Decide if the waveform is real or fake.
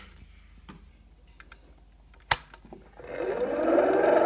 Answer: real